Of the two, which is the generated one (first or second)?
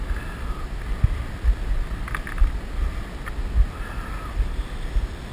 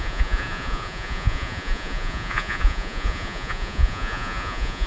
second